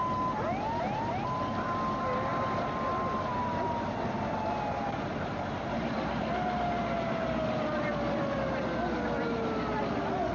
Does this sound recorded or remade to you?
recorded